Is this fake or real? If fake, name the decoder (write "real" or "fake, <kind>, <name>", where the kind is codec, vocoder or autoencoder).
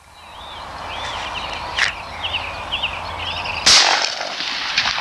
real